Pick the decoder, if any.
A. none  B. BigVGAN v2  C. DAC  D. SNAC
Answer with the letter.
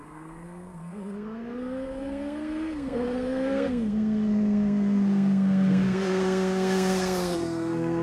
D